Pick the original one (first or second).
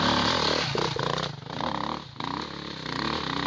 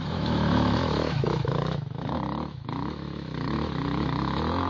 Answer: first